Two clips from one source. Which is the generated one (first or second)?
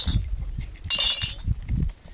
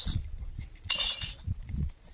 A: second